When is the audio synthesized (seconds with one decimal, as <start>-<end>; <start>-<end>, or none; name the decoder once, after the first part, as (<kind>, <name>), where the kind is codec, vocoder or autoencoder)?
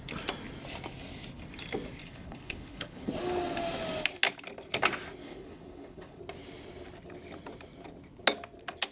2.0-3.1 (codec, HILCodec); 5.2-6.2